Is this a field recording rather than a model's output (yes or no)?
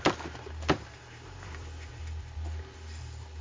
yes